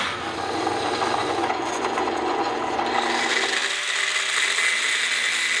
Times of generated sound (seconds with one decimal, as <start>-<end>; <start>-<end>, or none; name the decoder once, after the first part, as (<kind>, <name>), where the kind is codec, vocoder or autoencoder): 1.2-2.8 (vocoder, Vocos)